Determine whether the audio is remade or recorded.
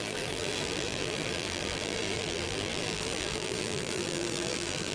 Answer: remade